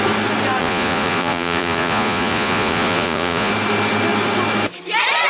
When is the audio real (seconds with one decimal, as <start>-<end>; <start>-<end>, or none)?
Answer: 0.0-0.6; 3.5-5.3